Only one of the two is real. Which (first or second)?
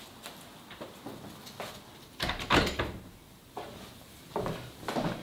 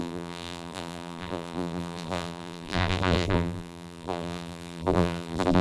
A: first